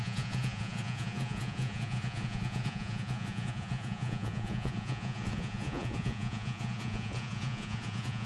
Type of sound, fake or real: fake